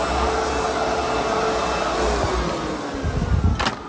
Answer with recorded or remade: recorded